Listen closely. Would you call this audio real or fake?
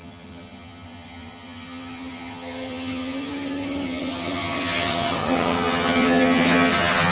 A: fake